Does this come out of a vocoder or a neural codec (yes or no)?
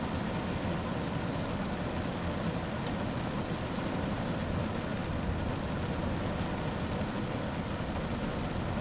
no